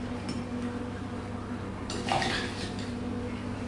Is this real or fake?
real